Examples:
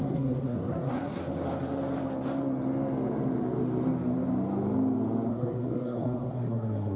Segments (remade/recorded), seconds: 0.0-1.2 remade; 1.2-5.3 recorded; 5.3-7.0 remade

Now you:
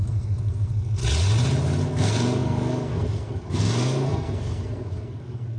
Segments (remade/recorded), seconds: 0.0-1.0 remade; 1.0-1.8 recorded; 1.8-5.6 remade

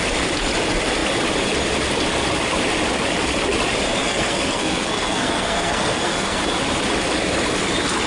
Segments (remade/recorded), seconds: 0.0-4.0 recorded; 4.0-6.4 remade; 6.4-8.1 recorded

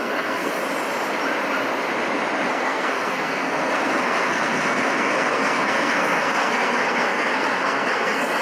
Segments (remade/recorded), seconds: 0.0-0.6 remade; 0.6-2.5 recorded; 2.5-8.4 remade